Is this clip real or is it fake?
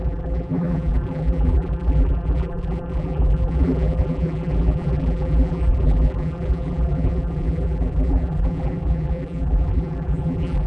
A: fake